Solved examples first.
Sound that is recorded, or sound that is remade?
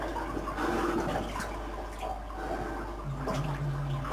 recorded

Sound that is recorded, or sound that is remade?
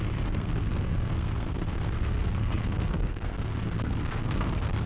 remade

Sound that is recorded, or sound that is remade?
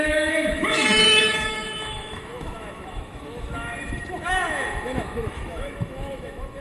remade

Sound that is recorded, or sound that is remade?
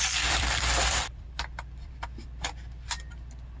remade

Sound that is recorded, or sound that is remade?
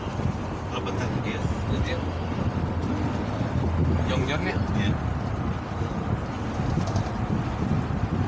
recorded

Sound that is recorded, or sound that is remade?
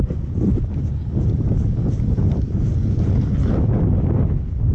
recorded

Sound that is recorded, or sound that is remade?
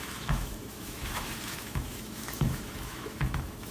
remade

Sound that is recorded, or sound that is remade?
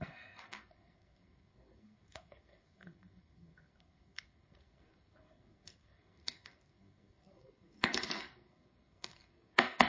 remade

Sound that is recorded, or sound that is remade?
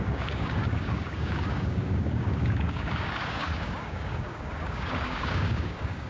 remade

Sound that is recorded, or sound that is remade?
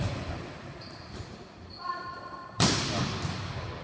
remade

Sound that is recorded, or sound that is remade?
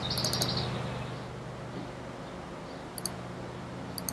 recorded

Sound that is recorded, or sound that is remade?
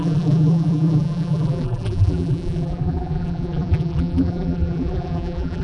remade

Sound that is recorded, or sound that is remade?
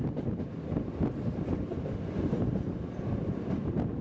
recorded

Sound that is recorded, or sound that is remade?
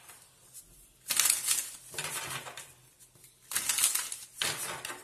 recorded